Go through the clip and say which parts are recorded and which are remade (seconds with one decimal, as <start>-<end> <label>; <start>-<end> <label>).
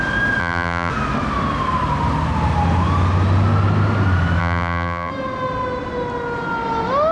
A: 0.0-0.4 recorded; 0.4-0.9 remade; 0.9-4.4 recorded; 4.4-5.1 remade; 5.1-7.1 recorded